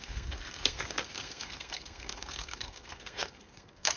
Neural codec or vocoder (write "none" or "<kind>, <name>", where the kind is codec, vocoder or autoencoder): codec, SNAC